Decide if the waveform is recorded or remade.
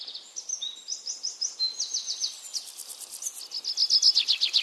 recorded